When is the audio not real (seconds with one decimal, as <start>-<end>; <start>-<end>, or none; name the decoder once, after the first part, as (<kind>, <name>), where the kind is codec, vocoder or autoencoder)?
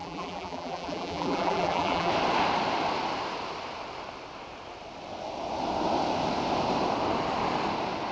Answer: 0.0-2.1 (vocoder, BigVGAN v2)